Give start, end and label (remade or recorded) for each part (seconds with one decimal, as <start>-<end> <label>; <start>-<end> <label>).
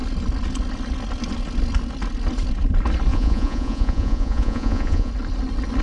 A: 0.0-3.1 recorded; 3.1-5.1 remade; 5.1-5.8 recorded